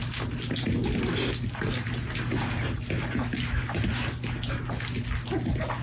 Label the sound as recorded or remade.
recorded